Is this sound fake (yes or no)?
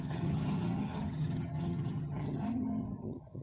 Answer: yes